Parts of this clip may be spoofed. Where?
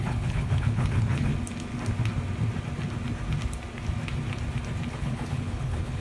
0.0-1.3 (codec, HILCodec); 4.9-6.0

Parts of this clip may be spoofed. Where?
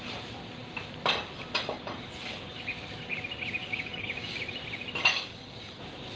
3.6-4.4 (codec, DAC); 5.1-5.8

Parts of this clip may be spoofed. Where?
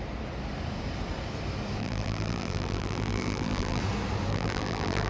1.8-3.8 (vocoder, BigVGAN v2); 4.3-5.1